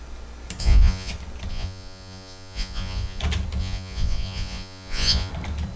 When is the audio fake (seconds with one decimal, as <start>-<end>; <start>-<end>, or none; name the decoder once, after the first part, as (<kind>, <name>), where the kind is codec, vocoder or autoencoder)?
0.6-1.1 (vocoder, Vocos); 1.5-3.2; 3.6-5.3